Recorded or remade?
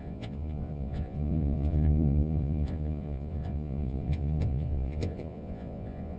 remade